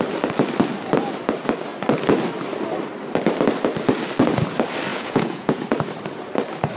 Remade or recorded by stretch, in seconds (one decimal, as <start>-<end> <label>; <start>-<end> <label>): 0.0-4.9 recorded; 4.9-5.6 remade; 5.6-6.8 recorded